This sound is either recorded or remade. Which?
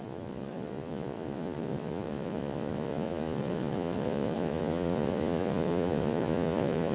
remade